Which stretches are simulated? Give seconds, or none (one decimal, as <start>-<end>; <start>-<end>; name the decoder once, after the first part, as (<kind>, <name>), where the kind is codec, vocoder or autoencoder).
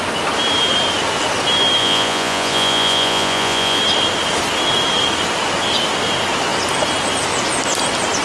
1.8-3.8 (vocoder, Vocos)